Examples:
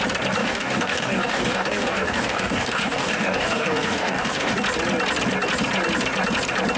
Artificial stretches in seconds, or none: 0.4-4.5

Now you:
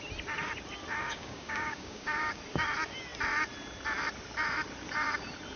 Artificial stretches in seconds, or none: 1.0-2.4